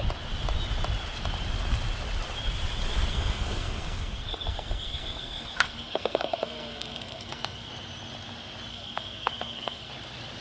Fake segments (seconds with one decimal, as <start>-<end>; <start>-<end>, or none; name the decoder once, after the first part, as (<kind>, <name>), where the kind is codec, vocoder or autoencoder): 3.1-7.7 (codec, SNAC); 8.7-9.9